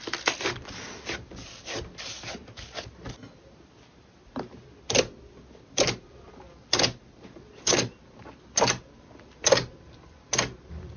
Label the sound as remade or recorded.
recorded